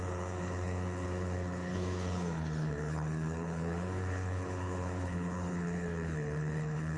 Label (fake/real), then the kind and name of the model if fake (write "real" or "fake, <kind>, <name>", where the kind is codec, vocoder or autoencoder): fake, codec, HILCodec